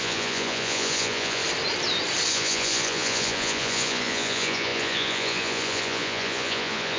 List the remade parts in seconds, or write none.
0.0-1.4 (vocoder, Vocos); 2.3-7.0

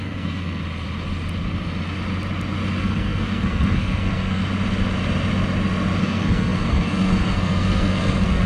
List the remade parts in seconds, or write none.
0.0-0.6 (codec, SNAC); 2.8-4.4; 6.0-8.5

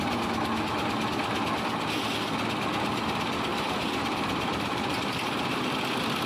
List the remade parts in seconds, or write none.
3.5-5.7 (vocoder, BigVGAN v2)

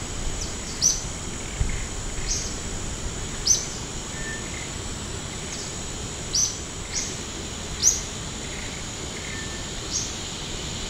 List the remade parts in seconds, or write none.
0.0-6.4 (vocoder, BigVGAN v2); 6.9-7.8; 8.6-10.9

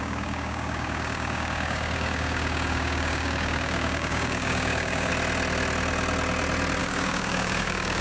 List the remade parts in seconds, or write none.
0.0-5.1 (codec, DAC); 6.8-8.0

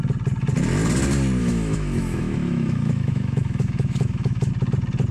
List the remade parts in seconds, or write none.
1.4-4.5 (autoencoder, DAC-VAE)

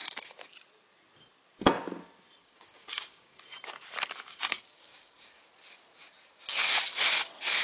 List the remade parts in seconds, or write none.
2.4-3.4 (codec, DAC); 4.3-5.4